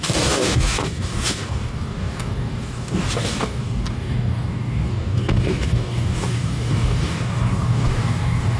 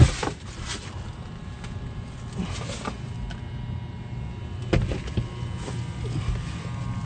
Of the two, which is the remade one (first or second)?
first